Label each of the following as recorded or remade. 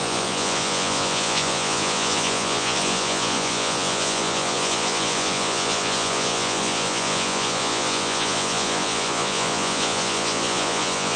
remade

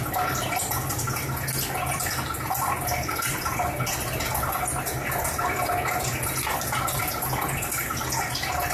recorded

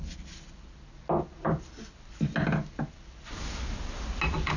recorded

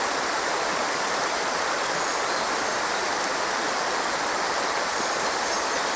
recorded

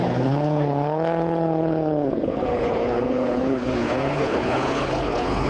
remade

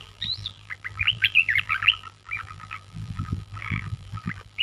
remade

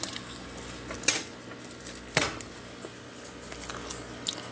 recorded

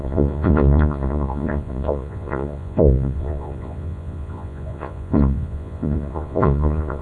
remade